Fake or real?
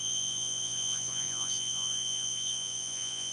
fake